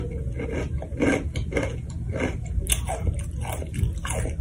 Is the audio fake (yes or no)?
no